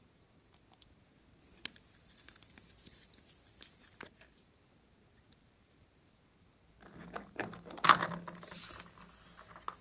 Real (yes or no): yes